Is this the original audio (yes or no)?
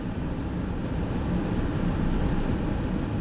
no